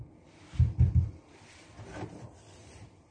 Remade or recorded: remade